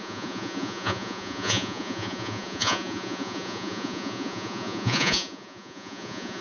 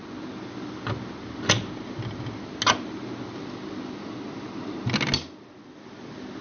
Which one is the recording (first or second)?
second